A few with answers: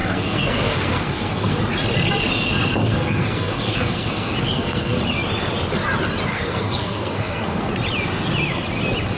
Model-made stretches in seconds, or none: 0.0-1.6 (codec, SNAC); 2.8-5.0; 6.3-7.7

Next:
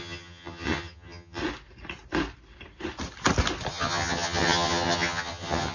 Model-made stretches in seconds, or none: 0.0-1.4 (vocoder, HiFi-GAN); 3.7-5.7

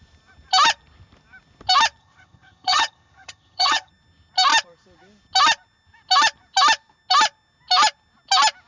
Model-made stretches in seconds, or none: 2.0-3.9 (vocoder, HiFi-GAN)

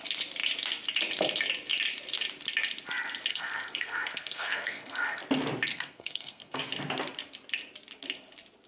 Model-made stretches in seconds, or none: 3.3-5.2 (codec, SNAC); 5.7-6.6